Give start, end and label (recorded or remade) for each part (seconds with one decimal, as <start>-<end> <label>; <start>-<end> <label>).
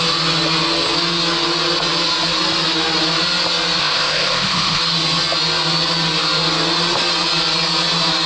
0.0-3.8 recorded; 3.8-4.8 remade; 4.8-8.3 recorded